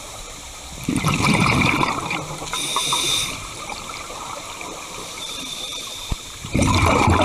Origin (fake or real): fake